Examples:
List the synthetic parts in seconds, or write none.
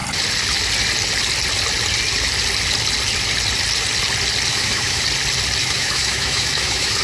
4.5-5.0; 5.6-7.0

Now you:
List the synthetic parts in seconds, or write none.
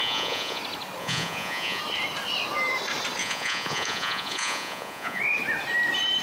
0.0-0.6; 1.0-1.8; 3.2-5.2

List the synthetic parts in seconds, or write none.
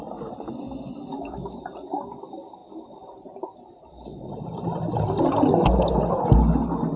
1.1-1.6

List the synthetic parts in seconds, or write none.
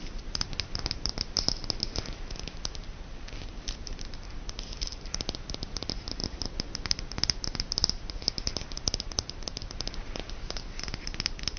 none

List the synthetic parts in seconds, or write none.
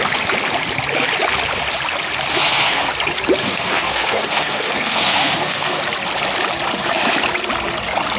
2.3-2.9; 3.4-5.8